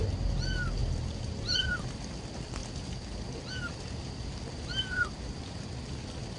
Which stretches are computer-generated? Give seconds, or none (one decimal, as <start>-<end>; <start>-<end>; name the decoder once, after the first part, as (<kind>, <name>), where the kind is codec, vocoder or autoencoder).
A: none